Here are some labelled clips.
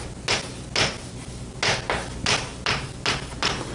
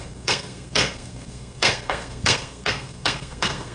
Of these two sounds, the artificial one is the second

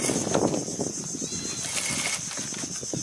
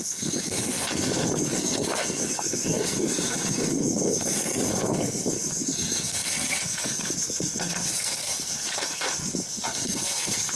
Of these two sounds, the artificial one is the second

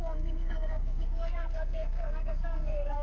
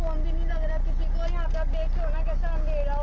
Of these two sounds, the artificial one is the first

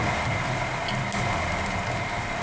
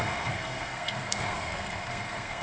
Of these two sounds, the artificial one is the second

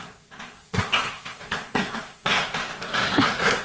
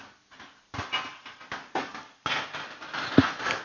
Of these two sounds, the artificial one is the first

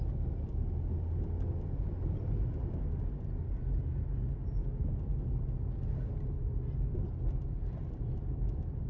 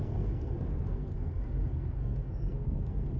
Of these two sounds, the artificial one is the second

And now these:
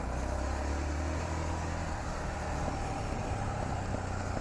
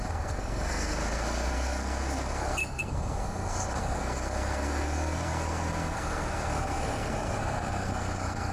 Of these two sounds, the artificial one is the second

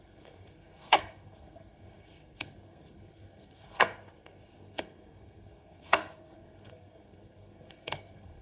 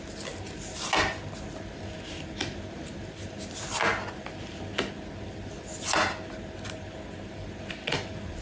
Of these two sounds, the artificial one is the first